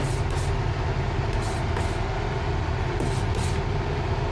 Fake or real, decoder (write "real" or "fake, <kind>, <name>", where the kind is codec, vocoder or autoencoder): real